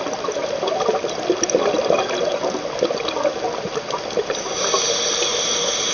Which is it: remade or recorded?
recorded